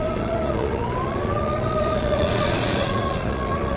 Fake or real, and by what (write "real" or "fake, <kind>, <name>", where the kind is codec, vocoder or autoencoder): fake, vocoder, Vocos